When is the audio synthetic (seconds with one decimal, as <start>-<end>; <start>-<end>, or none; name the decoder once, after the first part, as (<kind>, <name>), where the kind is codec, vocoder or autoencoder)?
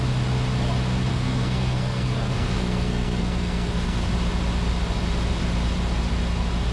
1.1-4.1 (codec, SNAC)